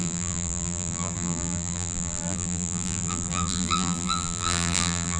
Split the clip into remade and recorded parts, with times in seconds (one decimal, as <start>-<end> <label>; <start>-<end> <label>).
0.0-5.2 remade